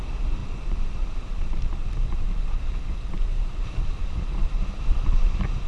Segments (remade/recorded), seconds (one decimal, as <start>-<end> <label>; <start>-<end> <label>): 0.0-0.4 recorded; 0.4-2.6 remade; 2.6-3.3 recorded; 3.3-4.0 remade; 4.0-5.7 recorded